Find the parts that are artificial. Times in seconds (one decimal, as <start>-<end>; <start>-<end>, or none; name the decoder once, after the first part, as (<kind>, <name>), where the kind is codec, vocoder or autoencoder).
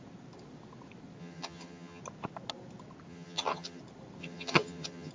1.2-2.0 (vocoder, HiFi-GAN); 3.1-3.8; 4.2-5.1